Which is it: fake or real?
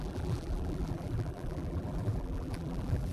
fake